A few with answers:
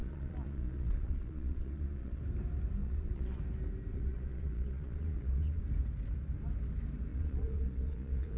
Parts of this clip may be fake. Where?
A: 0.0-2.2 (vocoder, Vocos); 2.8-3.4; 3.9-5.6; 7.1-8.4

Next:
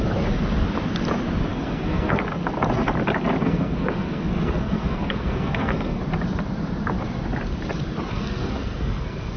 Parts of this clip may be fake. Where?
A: 1.5-2.2 (codec, SNAC); 3.4-6.0; 8.1-9.4

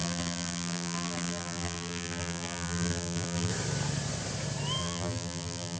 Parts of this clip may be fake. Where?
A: 0.0-3.5 (vocoder, BigVGAN v2); 4.8-5.8

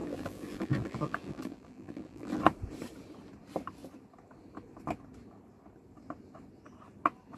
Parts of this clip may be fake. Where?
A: 0.0-2.4 (vocoder, BigVGAN v2)

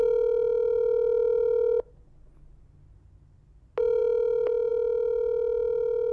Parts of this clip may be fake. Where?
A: none

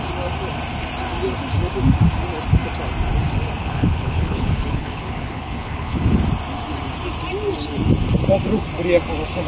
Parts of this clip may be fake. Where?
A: 3.6-6.0 (codec, HILCodec)

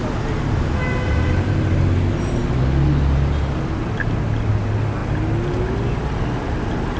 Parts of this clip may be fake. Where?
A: none

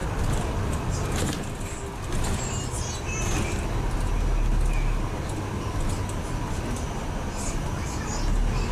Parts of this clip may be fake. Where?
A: none